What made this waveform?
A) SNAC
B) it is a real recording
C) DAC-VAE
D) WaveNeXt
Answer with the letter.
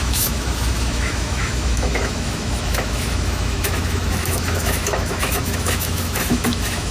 C